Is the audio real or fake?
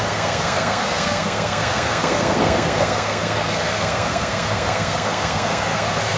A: fake